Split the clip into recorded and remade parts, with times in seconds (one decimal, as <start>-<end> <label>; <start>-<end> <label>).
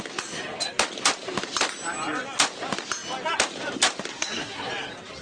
0.0-4.1 recorded; 4.1-4.7 remade; 4.7-5.2 recorded